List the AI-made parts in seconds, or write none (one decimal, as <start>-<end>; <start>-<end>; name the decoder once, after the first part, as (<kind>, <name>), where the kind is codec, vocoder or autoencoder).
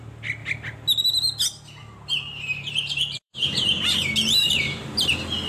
1.8-5.1 (vocoder, BigVGAN v2)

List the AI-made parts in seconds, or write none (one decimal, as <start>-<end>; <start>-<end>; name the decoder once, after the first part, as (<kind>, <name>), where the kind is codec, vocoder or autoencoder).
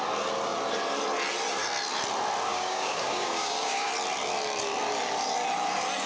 2.5-3.9 (codec, DAC)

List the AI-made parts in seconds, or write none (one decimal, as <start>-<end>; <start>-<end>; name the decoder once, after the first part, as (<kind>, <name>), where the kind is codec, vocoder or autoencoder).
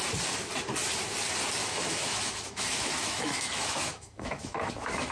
1.6-5.1 (autoencoder, DAC-VAE)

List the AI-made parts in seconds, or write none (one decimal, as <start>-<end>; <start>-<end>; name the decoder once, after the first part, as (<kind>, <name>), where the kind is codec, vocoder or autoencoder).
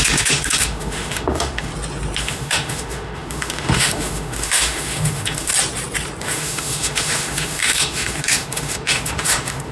0.0-1.7 (autoencoder, DAC-VAE); 2.2-5.5; 6.2-9.7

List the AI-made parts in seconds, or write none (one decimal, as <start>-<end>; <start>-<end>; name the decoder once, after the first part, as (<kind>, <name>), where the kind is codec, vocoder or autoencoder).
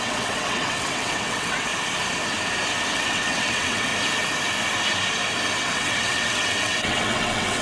0.0-1.7 (vocoder, WaveNeXt); 2.9-3.9; 5.6-7.6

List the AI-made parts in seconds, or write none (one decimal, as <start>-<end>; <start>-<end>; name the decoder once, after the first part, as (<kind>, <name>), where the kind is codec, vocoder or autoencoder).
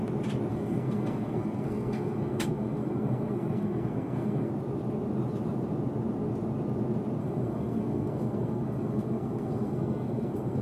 0.5-4.5 (codec, SNAC); 7.2-10.6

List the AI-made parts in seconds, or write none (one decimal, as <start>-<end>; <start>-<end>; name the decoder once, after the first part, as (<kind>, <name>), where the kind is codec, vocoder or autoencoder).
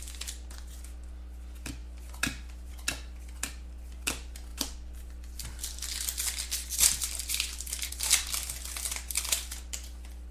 none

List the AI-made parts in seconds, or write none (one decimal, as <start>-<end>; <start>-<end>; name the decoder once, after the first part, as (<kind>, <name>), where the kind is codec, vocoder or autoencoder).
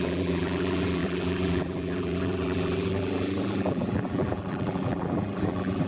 0.0-5.9 (vocoder, BigVGAN v2)